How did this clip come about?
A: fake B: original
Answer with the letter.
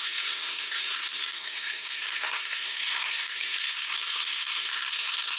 A